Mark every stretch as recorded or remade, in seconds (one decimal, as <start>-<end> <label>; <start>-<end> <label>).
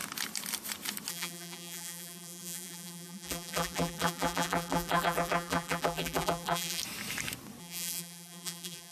0.0-1.1 recorded; 1.1-6.8 remade; 6.8-7.6 recorded; 7.6-8.9 remade